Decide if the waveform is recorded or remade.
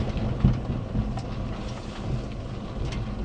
recorded